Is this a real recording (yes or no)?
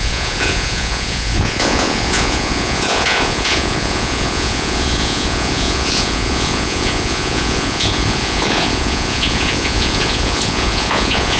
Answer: no